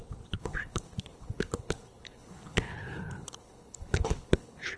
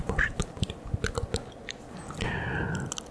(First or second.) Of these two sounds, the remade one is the first